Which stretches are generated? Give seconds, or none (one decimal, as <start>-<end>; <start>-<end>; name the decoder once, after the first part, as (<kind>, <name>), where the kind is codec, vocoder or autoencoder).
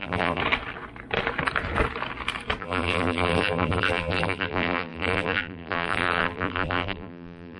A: 0.0-0.4 (vocoder, BigVGAN v2); 2.6-7.6